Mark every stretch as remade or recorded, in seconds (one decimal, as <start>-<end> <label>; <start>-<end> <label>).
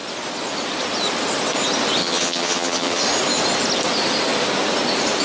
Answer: 0.0-2.0 recorded; 2.0-3.0 remade; 3.0-5.2 recorded